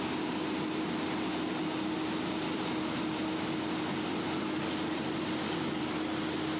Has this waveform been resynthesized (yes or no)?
no